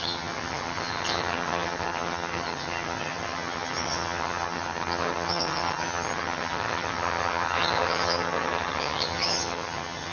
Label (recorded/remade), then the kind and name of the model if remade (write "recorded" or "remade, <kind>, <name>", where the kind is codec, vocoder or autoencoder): remade, vocoder, HiFi-GAN